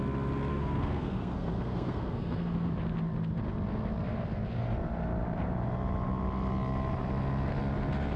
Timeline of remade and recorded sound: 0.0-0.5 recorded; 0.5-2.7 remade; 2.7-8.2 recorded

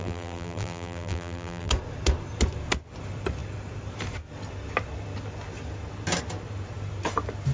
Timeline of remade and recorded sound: 0.0-1.7 remade; 1.7-7.5 recorded

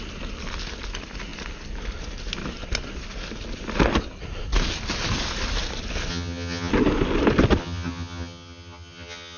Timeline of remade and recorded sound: 0.0-6.1 recorded; 6.1-6.7 remade; 6.7-7.6 recorded; 7.6-9.4 remade

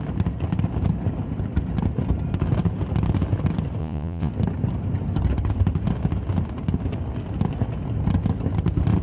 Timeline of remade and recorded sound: 0.0-3.8 recorded; 3.8-4.3 remade; 4.3-9.0 recorded

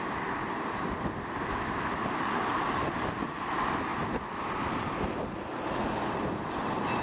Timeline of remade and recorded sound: 0.0-2.0 recorded; 2.0-3.0 remade; 3.0-3.9 recorded; 3.9-4.9 remade; 4.9-7.0 recorded

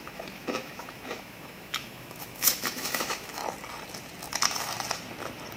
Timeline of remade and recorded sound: 0.0-3.4 remade; 3.4-5.6 recorded

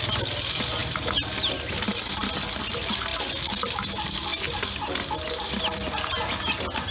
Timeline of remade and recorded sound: 0.0-6.9 recorded

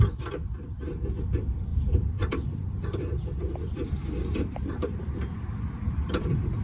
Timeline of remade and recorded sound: 0.0-6.6 remade